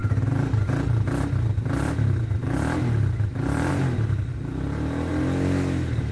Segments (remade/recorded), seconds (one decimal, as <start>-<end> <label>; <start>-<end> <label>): 0.0-6.1 recorded